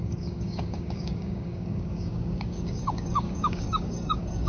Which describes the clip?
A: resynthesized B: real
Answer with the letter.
A